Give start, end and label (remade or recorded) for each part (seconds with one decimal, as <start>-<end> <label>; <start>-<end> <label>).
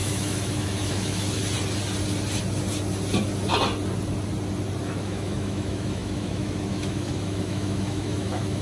0.0-1.4 remade; 1.4-4.8 recorded; 4.8-8.6 remade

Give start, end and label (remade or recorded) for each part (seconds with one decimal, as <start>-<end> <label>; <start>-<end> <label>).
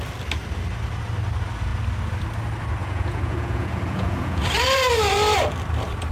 0.0-2.8 recorded; 2.8-4.4 remade; 4.4-6.1 recorded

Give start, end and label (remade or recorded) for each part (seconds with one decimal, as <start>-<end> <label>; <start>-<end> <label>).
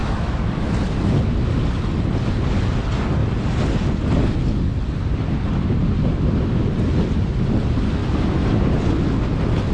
0.0-0.7 remade; 0.7-9.7 recorded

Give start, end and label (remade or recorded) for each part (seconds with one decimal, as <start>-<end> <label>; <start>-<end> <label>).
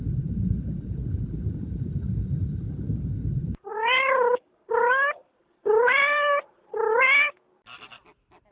0.0-3.7 recorded; 3.7-7.0 remade; 7.0-8.5 recorded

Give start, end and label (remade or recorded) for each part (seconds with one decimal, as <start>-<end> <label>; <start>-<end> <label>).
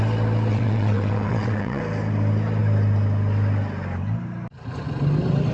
0.0-0.5 recorded; 0.5-1.8 remade; 1.8-5.5 recorded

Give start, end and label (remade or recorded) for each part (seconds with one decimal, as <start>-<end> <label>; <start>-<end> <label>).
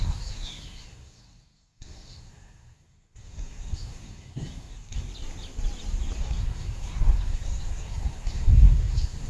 0.0-5.1 remade; 5.1-6.2 recorded; 6.2-9.3 remade